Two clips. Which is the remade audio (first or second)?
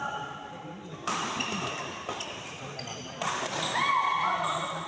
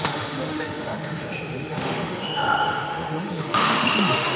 second